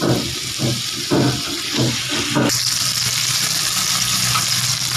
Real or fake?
real